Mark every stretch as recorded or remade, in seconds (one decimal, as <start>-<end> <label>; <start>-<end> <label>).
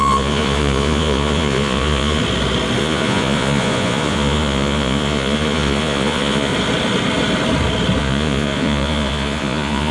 0.0-2.2 remade; 2.2-2.8 recorded; 2.8-6.5 remade; 6.5-8.0 recorded; 8.0-9.9 remade